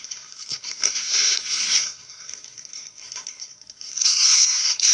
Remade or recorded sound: remade